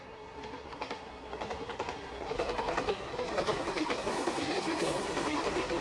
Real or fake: fake